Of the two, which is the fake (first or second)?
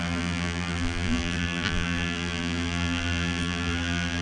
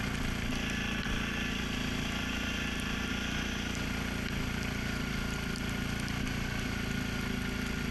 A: first